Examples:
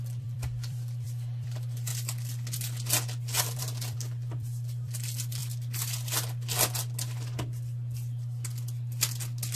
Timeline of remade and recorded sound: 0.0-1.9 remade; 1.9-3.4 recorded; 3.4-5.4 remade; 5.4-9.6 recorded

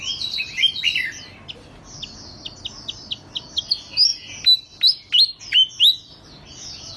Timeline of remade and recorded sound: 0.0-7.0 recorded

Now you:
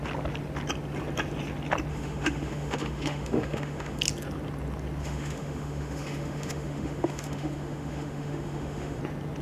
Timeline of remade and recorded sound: 0.0-1.9 recorded; 1.9-4.0 remade; 4.0-5.0 recorded; 5.0-9.0 remade; 9.0-9.4 recorded

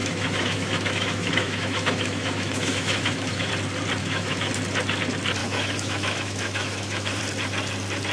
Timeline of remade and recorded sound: 0.0-3.5 remade; 3.5-4.0 recorded; 4.0-4.5 remade; 4.5-5.4 recorded; 5.4-7.2 remade; 7.2-8.1 recorded

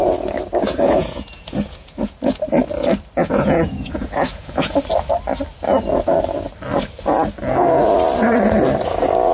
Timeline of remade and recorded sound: 0.0-0.6 recorded; 0.6-2.4 remade; 2.4-3.2 recorded; 3.2-4.8 remade; 4.8-9.3 recorded

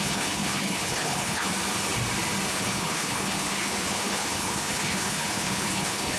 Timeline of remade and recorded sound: 0.0-1.5 remade; 1.5-2.5 recorded; 2.5-6.2 remade

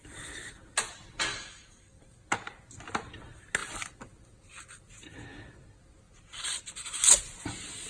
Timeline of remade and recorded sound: 0.0-1.3 recorded; 1.3-2.2 remade; 2.2-7.9 recorded